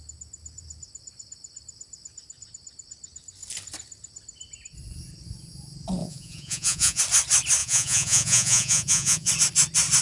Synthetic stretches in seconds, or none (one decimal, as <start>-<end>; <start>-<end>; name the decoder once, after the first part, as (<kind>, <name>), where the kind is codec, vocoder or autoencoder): 6.0-7.0 (vocoder, Vocos); 7.6-9.3